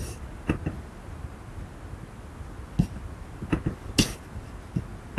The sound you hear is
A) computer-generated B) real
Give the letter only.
B